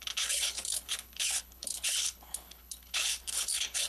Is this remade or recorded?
remade